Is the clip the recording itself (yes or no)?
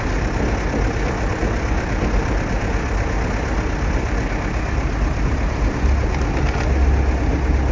yes